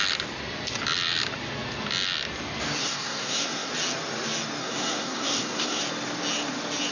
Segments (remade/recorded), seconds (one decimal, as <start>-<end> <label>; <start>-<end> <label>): 0.0-2.8 recorded; 2.8-3.7 remade; 3.7-4.6 recorded; 4.6-5.8 remade; 5.8-6.9 recorded